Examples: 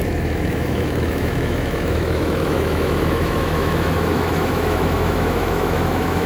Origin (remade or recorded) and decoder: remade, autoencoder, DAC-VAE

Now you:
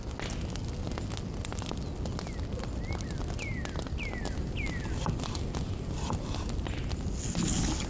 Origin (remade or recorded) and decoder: recorded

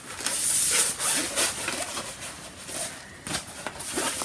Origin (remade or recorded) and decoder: recorded